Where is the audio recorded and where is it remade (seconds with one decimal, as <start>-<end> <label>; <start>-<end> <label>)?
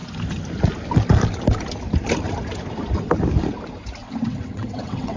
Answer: 0.0-4.0 recorded; 4.0-5.2 remade